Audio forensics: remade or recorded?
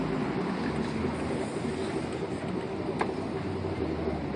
recorded